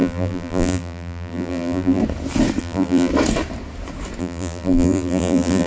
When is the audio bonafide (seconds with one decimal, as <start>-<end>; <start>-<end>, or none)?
2.0-2.6; 3.1-4.2